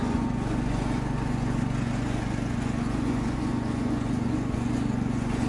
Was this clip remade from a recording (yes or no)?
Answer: yes